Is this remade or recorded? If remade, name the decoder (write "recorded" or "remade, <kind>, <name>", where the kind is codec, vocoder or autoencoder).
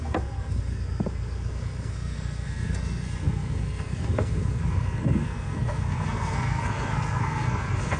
remade, codec, SNAC